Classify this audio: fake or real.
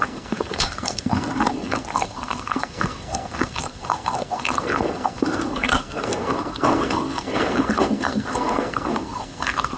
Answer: fake